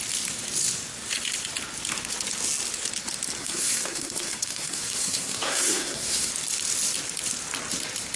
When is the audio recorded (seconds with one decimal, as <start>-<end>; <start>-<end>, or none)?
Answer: 0.0-3.4; 6.3-8.2